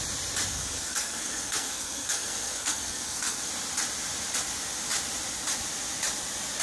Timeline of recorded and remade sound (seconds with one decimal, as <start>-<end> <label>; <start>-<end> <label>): 0.0-0.5 recorded; 0.5-3.5 remade; 3.5-6.6 recorded